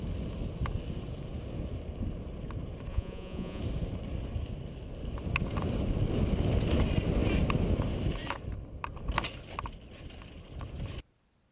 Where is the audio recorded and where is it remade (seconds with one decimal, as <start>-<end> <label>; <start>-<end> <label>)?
0.0-2.9 recorded; 2.9-3.6 remade; 3.6-11.5 recorded